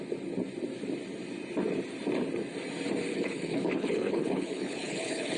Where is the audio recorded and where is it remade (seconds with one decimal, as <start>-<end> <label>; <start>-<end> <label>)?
0.0-3.1 recorded; 3.1-5.4 remade